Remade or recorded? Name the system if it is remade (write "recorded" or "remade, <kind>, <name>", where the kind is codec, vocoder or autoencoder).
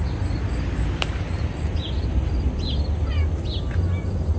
recorded